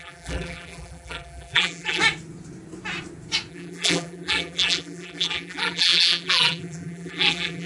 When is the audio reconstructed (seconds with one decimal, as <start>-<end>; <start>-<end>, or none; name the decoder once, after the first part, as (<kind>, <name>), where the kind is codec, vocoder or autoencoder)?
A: 0.0-2.0 (vocoder, BigVGAN v2); 3.5-7.7